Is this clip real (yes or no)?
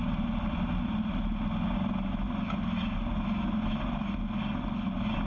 yes